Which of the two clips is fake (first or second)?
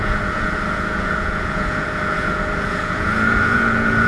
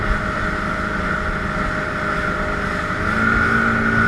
first